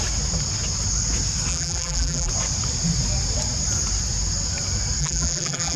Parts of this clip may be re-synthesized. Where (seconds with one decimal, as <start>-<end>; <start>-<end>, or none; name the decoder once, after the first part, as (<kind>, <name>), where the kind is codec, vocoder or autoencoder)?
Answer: 1.5-2.3 (vocoder, BigVGAN v2); 5.0-5.8